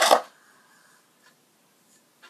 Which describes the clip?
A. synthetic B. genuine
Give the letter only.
B